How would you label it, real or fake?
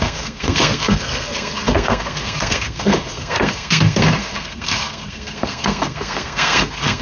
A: fake